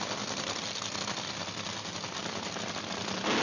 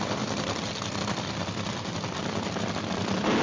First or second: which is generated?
second